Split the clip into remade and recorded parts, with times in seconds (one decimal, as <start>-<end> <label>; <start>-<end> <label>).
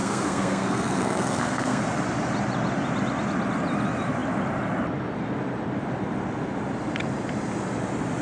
0.0-1.8 remade; 1.8-8.2 recorded